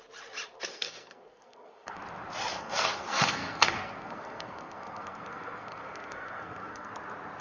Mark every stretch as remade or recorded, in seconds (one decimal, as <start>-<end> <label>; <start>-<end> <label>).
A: 0.0-0.7 recorded; 0.7-2.0 remade; 2.0-2.5 recorded; 2.5-6.9 remade; 6.9-7.4 recorded